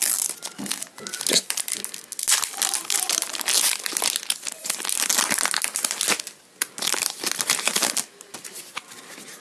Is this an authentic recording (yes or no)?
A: yes